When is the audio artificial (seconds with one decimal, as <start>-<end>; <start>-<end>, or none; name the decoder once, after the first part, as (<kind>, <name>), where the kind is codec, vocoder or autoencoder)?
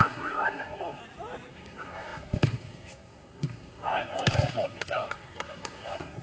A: 0.0-1.0 (codec, SNAC); 1.5-6.2